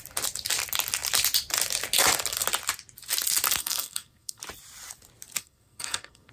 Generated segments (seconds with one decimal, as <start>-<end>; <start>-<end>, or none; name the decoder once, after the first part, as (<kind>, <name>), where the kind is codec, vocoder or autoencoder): 3.6-4.4 (codec, SNAC); 5.4-6.3